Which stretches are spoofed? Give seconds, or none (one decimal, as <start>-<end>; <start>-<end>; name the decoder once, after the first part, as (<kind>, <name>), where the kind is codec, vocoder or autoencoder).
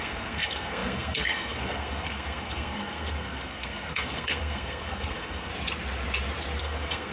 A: 0.0-5.5 (codec, SNAC); 6.6-7.1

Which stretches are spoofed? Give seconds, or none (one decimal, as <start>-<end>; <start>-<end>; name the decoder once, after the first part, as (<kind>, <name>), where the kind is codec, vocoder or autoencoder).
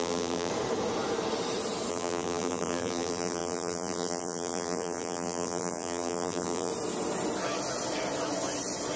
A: 0.0-0.5 (vocoder, BigVGAN v2); 1.9-6.7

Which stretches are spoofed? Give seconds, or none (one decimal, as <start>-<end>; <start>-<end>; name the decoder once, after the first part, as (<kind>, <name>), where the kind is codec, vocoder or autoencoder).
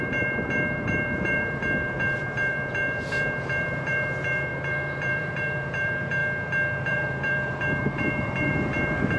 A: 0.0-6.2 (vocoder, BigVGAN v2); 6.8-9.2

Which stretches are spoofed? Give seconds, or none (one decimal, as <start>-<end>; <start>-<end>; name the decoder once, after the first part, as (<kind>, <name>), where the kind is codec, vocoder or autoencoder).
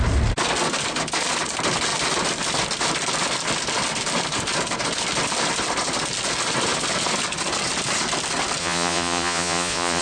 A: 8.6-10.0 (vocoder, Vocos)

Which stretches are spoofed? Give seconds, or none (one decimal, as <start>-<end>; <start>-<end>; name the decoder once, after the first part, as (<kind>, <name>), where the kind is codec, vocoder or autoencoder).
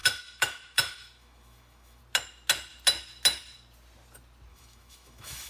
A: 0.0-2.0 (autoencoder, DAC-VAE); 4.5-5.5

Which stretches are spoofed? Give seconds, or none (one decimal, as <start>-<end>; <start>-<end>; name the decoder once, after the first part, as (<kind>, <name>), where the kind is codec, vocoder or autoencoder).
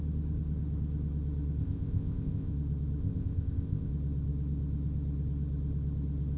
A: 1.6-2.5 (codec, ZipCodec); 3.0-3.9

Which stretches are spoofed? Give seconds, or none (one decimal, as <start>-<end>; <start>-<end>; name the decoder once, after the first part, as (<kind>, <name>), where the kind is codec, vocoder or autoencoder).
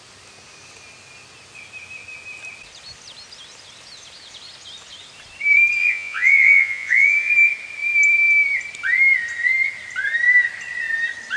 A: 5.8-7.3 (vocoder, Vocos)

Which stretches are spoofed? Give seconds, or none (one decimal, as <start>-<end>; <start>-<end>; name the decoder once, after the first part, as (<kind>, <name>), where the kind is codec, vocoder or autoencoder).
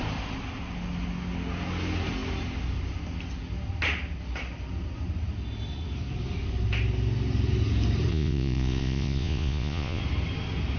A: 8.1-10.0 (vocoder, Vocos)